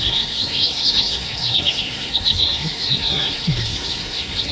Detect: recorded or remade remade